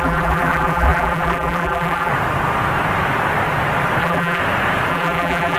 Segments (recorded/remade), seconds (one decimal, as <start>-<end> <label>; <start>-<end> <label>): 0.0-2.1 remade; 2.1-4.0 recorded; 4.0-4.4 remade; 4.4-4.9 recorded; 4.9-5.6 remade